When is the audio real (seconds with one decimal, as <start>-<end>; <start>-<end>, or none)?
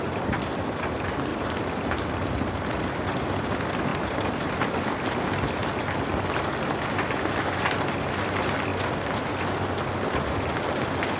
0.0-1.3; 2.1-8.7; 9.4-11.2